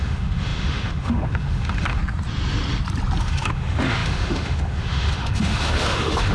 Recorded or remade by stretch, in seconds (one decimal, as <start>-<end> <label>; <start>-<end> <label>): 0.0-2.0 remade; 2.0-3.2 recorded; 3.2-6.3 remade